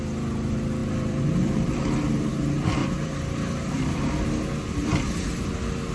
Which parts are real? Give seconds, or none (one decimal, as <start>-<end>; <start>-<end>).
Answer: 0.0-0.8; 2.3-2.8; 4.1-4.9; 5.5-5.9